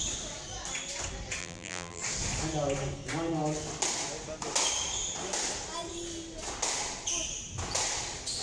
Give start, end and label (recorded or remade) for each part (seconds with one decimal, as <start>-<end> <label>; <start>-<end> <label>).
0.0-1.4 recorded; 1.4-2.0 remade; 2.0-8.4 recorded